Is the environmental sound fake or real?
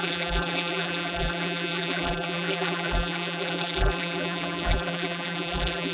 fake